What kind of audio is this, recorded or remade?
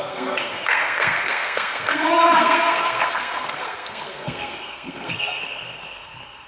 remade